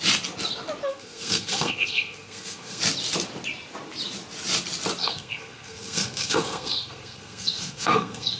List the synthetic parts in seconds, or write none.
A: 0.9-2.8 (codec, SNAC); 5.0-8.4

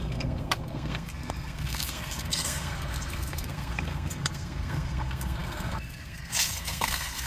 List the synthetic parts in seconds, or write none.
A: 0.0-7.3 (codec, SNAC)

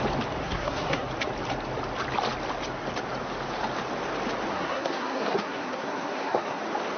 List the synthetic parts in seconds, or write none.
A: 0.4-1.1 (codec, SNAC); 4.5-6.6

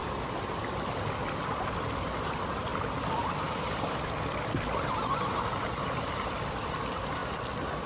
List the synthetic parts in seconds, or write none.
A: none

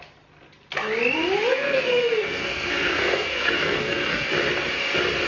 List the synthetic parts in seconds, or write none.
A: 1.5-4.3 (codec, SNAC)